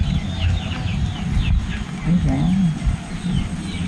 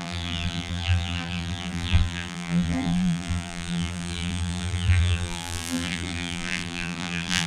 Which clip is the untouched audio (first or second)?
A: first